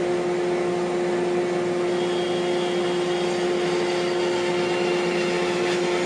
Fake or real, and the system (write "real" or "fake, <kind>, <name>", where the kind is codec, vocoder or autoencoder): real